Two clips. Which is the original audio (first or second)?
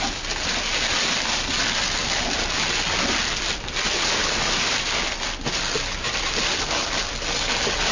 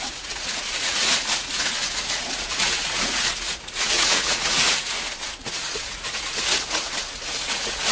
first